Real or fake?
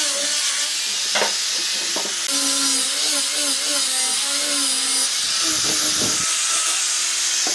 real